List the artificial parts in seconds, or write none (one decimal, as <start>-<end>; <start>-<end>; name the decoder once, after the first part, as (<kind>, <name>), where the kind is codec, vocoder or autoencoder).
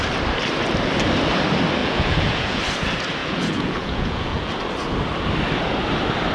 1.8-2.6 (vocoder, Vocos); 3.2-4.5